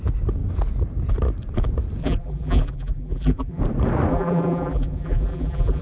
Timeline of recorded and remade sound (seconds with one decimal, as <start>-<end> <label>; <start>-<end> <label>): 0.0-2.0 recorded; 2.0-3.6 remade; 3.6-4.1 recorded; 4.1-5.8 remade